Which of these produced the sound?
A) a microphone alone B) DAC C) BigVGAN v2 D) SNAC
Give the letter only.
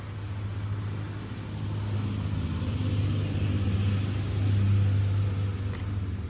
A